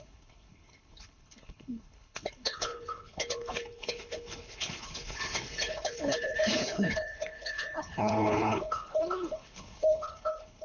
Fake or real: fake